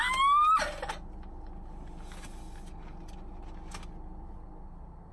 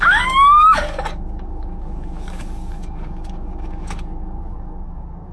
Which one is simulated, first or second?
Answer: second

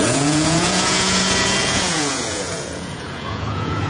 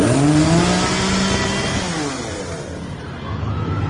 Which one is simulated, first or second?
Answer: first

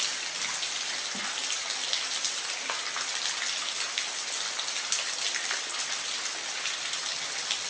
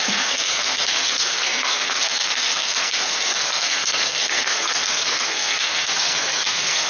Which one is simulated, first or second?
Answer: second